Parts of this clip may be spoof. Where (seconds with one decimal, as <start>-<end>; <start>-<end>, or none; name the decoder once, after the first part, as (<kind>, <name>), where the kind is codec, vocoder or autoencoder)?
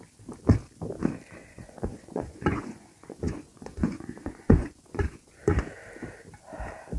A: 1.4-5.6 (vocoder, Vocos)